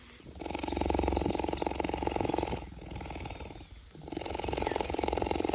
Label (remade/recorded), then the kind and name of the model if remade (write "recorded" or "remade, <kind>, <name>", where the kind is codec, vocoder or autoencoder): recorded